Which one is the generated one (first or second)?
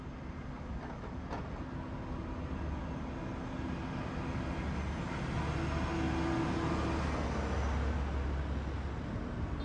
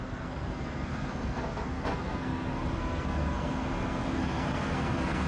second